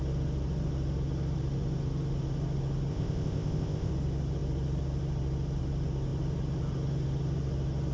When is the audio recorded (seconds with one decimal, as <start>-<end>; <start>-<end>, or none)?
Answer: 0.0-2.9; 3.9-7.9